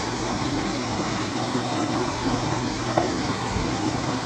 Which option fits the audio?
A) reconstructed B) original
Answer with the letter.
A